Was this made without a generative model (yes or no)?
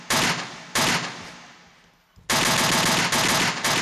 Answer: yes